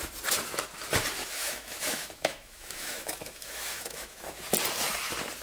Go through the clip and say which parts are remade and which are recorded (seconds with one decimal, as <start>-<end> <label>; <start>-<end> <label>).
0.0-1.2 recorded; 1.2-4.4 remade; 4.4-5.4 recorded